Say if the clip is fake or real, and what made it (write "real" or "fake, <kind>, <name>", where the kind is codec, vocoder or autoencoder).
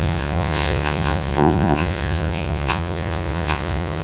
fake, vocoder, Vocos